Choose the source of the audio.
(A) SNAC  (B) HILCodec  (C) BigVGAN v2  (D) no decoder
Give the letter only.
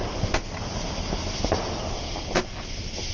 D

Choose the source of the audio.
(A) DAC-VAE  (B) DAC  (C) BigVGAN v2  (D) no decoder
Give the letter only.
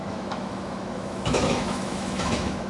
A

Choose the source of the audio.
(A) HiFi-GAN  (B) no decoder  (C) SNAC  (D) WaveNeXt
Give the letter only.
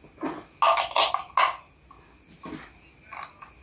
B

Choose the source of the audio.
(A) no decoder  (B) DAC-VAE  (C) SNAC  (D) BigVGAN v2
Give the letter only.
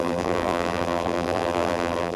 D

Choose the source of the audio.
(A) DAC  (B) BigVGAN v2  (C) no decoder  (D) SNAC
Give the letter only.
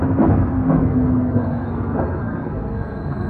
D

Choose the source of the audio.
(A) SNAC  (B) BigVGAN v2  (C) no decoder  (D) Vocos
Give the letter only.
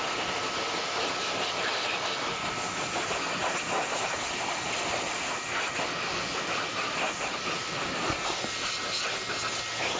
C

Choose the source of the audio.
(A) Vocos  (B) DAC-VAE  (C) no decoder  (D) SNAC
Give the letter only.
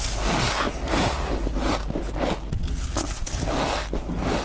C